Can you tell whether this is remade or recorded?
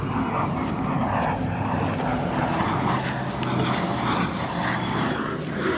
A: recorded